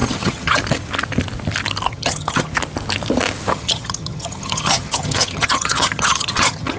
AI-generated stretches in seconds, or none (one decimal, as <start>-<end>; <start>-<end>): 0.0-0.6; 1.9-2.5; 3.5-6.8